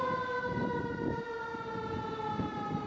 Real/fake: real